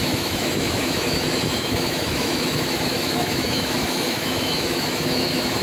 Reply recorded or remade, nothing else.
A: remade